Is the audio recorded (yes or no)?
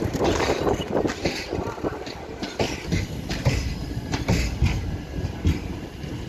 no